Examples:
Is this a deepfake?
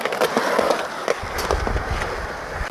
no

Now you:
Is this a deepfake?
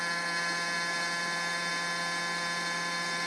yes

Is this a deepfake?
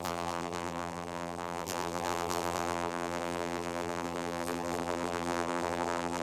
yes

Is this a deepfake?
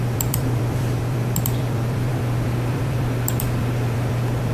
yes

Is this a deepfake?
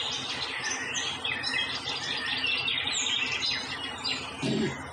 no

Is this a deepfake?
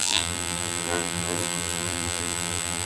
yes